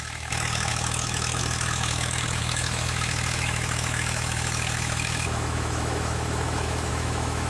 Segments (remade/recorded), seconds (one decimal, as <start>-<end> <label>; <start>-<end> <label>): 0.0-7.5 remade